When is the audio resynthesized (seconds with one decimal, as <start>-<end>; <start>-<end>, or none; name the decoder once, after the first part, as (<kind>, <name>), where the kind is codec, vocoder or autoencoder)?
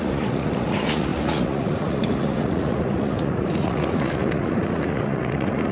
0.0-5.7 (vocoder, Vocos)